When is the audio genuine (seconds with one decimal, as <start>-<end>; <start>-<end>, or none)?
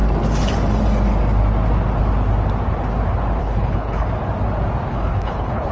0.0-3.4; 4.1-4.9